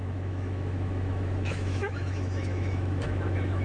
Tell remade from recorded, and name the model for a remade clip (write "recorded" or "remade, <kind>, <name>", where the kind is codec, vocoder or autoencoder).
remade, autoencoder, DAC-VAE